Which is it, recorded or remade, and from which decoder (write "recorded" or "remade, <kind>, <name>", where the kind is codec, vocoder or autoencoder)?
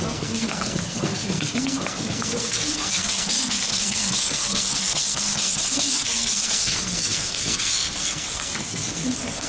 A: remade, codec, SNAC